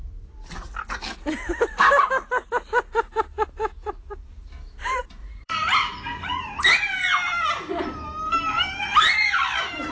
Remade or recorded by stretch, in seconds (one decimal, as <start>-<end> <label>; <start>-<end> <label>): 0.0-5.2 recorded; 5.2-6.6 remade; 6.6-9.9 recorded